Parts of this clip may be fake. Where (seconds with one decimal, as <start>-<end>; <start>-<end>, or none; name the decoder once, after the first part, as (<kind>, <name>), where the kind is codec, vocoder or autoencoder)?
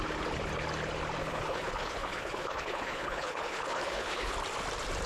1.2-4.3 (codec, HILCodec)